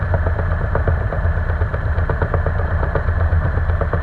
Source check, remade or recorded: remade